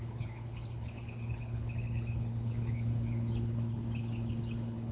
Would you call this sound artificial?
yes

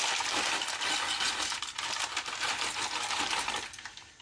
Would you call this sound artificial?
no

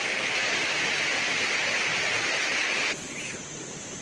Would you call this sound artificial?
no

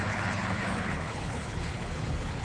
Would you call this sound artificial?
yes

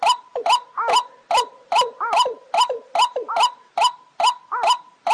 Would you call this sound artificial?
no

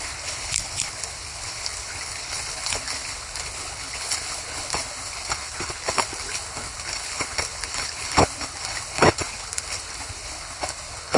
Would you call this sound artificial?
yes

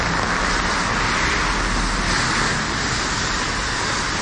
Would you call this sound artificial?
no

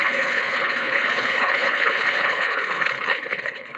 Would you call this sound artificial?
yes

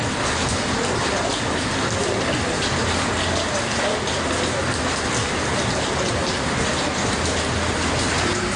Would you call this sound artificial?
no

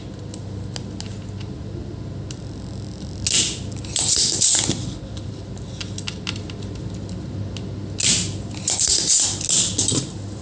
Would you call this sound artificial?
no